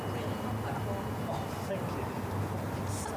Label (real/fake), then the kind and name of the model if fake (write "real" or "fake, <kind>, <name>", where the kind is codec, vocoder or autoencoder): real